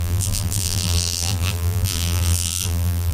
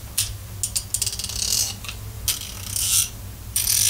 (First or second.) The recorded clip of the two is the second